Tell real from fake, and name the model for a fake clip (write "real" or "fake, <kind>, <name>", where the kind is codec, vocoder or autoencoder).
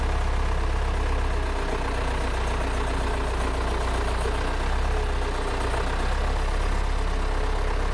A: real